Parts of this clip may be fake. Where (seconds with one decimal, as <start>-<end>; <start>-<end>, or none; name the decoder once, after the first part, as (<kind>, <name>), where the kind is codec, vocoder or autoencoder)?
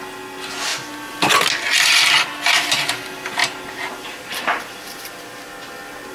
3.4-5.5 (vocoder, BigVGAN v2)